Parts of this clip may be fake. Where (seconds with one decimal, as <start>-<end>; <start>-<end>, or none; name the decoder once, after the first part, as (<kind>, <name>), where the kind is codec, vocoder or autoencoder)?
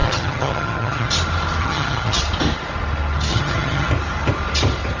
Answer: 0.0-1.1 (vocoder, HiFi-GAN); 1.6-2.2; 3.3-3.9